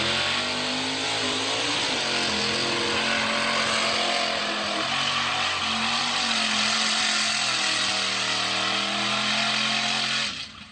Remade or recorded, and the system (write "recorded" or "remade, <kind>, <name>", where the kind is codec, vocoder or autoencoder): recorded